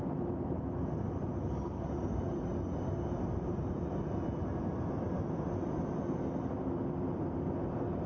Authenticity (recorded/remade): recorded